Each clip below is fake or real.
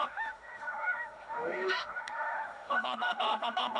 fake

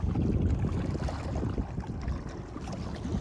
real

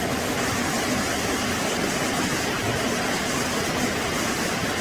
real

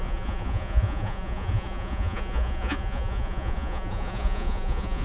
fake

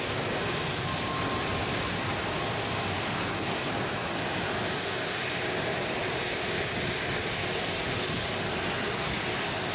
real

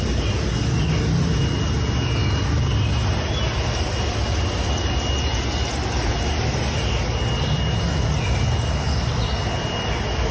real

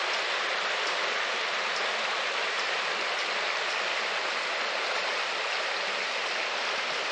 real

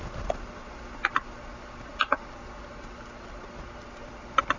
real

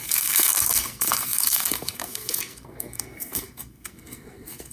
fake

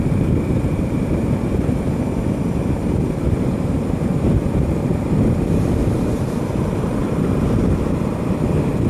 fake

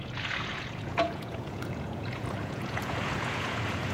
fake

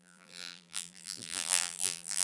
fake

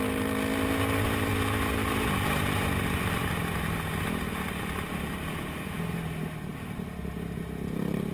real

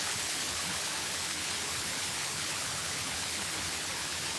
fake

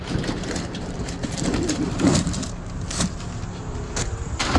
fake